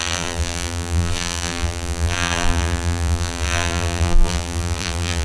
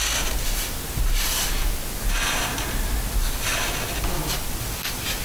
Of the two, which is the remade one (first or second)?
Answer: first